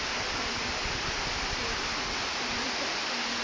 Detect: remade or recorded recorded